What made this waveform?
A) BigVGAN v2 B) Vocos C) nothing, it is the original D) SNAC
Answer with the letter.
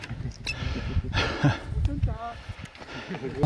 C